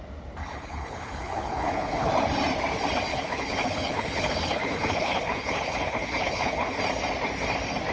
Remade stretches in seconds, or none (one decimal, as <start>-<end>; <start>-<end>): 0.4-2.1; 3.1-6.8